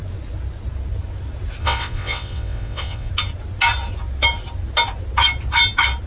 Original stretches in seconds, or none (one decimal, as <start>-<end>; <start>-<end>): 0.0-1.6; 3.1-6.1